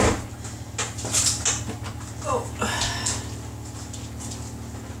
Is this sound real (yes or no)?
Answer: yes